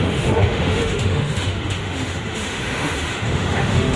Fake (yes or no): yes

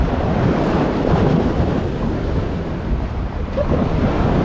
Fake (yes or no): no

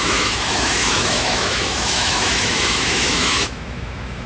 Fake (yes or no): yes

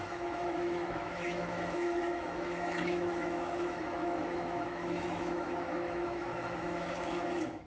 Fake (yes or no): yes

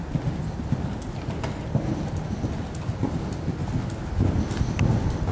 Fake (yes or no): no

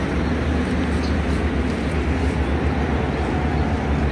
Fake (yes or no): no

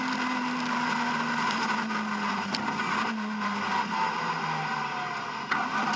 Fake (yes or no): no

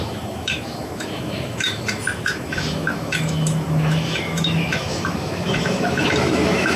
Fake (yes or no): yes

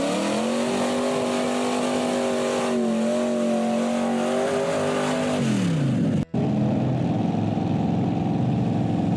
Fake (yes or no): no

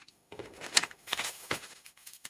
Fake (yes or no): yes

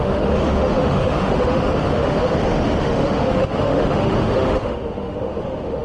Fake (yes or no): yes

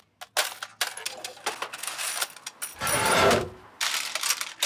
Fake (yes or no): no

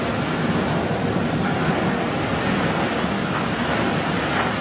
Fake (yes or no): no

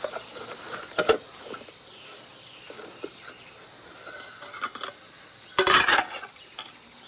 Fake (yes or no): no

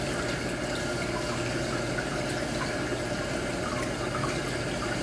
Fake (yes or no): no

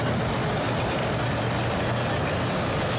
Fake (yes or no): no